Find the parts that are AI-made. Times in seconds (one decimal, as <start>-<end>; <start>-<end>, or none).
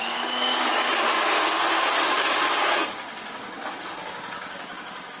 0.0-5.2